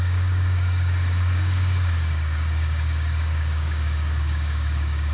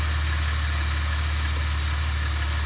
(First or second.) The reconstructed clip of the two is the first